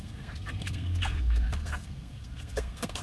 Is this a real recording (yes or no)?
no